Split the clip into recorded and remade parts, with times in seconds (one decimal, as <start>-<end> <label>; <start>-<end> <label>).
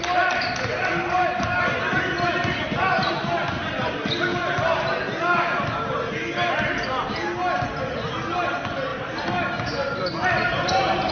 0.0-11.1 recorded